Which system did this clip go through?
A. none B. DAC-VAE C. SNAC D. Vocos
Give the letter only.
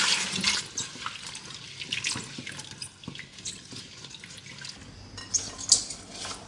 A